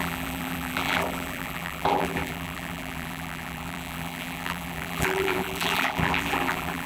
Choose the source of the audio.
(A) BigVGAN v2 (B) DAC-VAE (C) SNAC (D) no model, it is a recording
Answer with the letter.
A